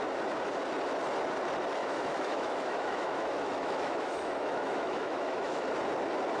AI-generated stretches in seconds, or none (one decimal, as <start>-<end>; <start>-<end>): 1.8-5.6